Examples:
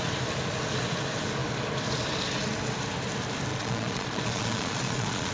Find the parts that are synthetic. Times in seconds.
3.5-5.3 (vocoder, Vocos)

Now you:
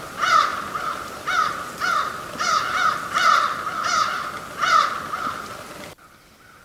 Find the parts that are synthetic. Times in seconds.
none

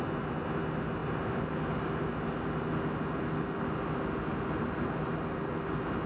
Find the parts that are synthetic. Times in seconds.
none

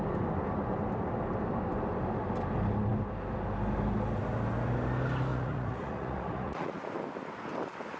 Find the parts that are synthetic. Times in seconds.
5.3-6.9 (vocoder, Vocos)